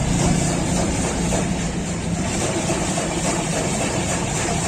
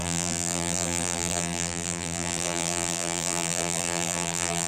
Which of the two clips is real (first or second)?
first